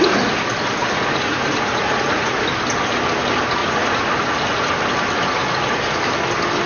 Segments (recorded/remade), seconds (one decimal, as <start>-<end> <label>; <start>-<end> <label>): 0.0-0.8 recorded; 0.8-2.3 remade; 2.3-3.6 recorded; 3.6-4.1 remade; 4.1-5.4 recorded; 5.4-6.0 remade; 6.0-6.7 recorded